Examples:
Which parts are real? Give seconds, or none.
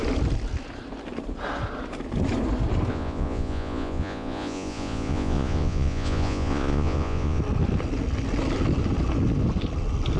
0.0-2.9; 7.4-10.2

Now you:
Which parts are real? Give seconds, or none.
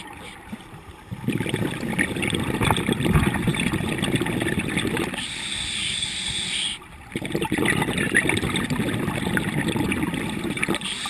0.0-11.1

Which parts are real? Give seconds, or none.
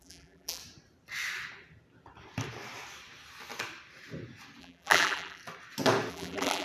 0.6-4.6; 5.4-6.1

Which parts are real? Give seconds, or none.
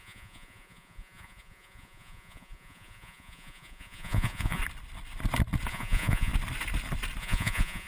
4.6-5.7; 6.3-7.2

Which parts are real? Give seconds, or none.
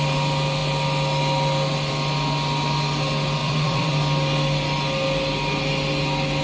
0.0-3.4; 3.9-6.4